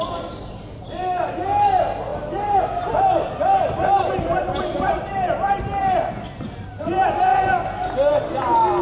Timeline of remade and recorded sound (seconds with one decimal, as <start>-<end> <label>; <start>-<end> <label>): 0.0-5.8 remade; 5.8-6.6 recorded; 6.6-7.3 remade; 7.3-8.1 recorded; 8.1-8.8 remade